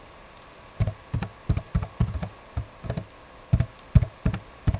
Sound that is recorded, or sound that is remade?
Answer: recorded